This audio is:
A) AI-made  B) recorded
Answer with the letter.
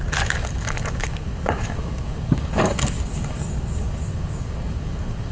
A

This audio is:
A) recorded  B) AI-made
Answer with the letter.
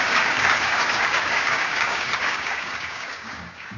B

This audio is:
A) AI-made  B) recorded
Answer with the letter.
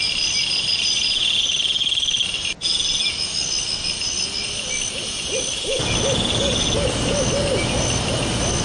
B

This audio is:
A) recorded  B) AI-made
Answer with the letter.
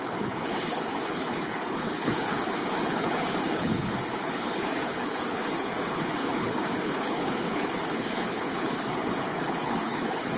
B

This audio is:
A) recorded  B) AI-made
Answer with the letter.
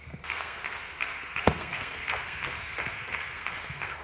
B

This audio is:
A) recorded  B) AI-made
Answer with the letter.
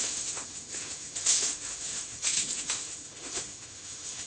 B